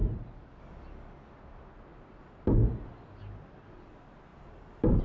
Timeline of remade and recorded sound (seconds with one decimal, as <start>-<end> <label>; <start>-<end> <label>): 0.0-0.6 remade; 0.6-5.0 recorded